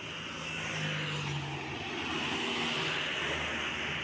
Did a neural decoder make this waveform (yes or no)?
no